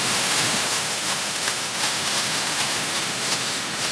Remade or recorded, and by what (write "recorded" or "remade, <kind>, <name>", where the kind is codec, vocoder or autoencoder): remade, autoencoder, DAC-VAE